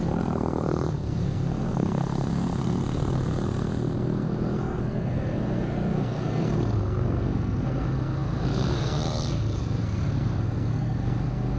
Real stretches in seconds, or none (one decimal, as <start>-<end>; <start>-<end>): none